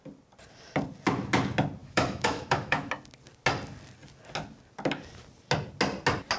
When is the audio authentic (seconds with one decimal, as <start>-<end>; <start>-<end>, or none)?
0.0-1.8; 2.9-6.4